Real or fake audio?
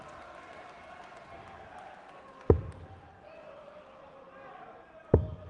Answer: real